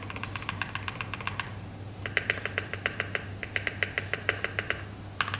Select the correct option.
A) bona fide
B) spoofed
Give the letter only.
A